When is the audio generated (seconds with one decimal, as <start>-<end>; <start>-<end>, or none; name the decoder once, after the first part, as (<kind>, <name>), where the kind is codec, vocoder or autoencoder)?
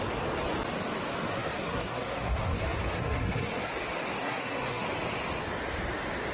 1.3-3.7 (codec, SNAC); 4.2-4.8